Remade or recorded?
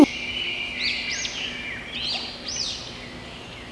recorded